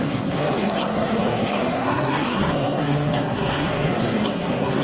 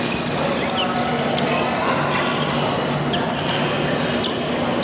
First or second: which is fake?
first